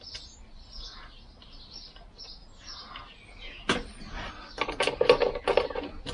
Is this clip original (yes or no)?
yes